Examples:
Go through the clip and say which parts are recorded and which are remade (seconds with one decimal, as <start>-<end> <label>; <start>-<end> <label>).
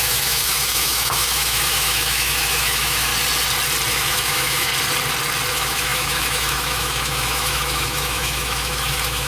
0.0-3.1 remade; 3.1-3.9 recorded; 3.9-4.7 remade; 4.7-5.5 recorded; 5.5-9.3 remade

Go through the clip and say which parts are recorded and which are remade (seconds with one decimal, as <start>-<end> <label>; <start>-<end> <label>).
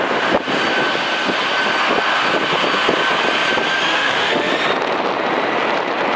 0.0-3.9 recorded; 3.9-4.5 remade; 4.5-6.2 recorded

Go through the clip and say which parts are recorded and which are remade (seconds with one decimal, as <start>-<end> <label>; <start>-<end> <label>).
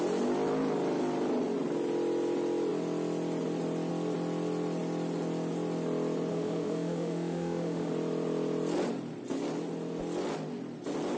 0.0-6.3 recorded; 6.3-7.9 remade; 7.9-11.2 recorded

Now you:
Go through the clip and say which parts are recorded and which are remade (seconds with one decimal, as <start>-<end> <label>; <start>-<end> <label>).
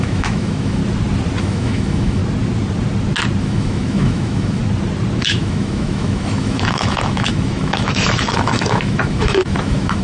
0.0-0.8 remade; 0.8-1.4 recorded; 1.4-2.2 remade; 2.2-3.4 recorded; 3.4-4.6 remade; 4.6-5.2 recorded; 5.2-10.0 remade